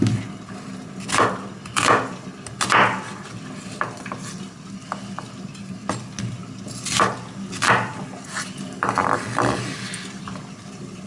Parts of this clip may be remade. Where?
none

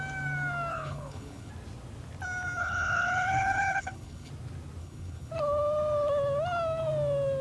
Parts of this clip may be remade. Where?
0.7-1.5 (codec, HILCodec); 2.6-4.3; 4.8-5.3

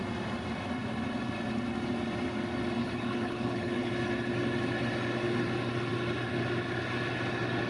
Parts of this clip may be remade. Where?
2.8-3.9 (codec, HILCodec)